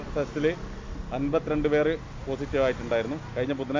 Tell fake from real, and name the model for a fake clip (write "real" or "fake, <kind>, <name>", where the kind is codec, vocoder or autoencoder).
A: real